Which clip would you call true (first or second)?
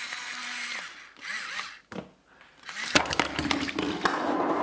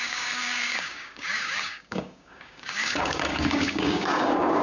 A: first